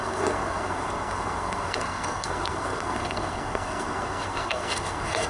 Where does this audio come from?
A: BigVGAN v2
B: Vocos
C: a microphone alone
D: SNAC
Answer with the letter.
D